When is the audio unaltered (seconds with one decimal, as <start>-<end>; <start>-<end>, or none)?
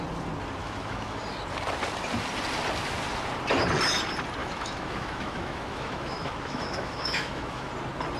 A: 0.0-0.6; 1.2-4.4; 7.7-8.2